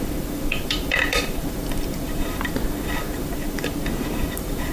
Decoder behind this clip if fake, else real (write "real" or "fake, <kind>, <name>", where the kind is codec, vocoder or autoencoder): fake, vocoder, BigVGAN v2